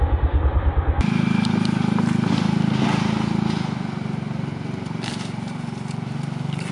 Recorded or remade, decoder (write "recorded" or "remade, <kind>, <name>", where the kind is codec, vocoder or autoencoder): recorded